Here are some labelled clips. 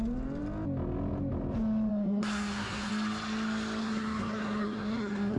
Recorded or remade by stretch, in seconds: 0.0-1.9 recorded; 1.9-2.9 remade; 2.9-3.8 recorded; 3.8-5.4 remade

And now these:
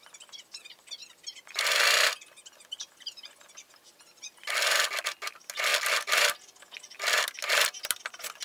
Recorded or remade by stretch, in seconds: 0.0-8.4 recorded

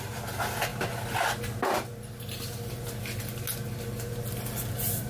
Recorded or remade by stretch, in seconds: 0.0-5.1 recorded

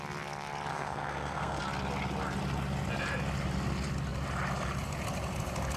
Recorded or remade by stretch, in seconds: 0.0-0.7 recorded; 0.7-1.6 remade; 1.6-5.8 recorded

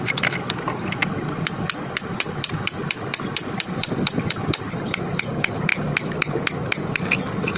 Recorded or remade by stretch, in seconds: 0.0-7.6 recorded

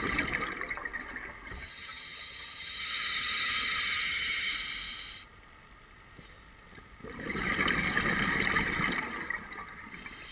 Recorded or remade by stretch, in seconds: 0.0-1.7 recorded; 1.7-4.5 remade; 4.5-10.3 recorded